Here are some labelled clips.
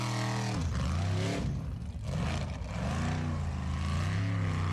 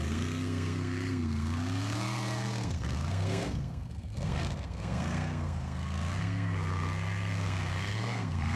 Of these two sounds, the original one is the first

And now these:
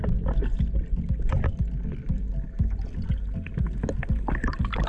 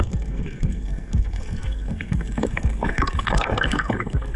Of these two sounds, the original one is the first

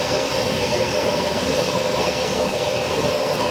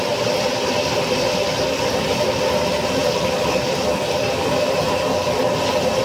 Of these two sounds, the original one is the second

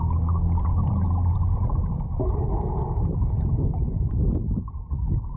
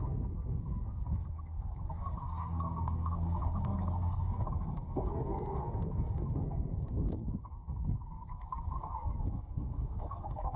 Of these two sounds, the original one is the first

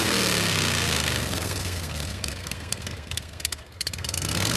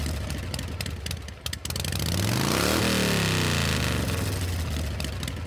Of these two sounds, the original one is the second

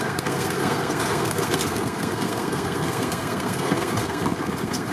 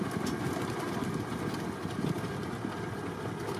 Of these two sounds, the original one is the second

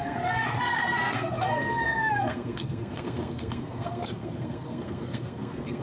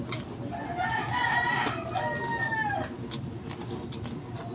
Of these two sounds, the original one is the second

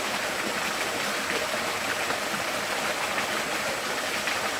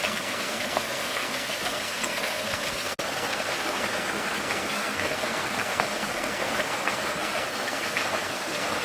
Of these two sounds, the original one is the first